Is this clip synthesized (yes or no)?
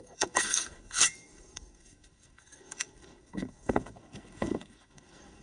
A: yes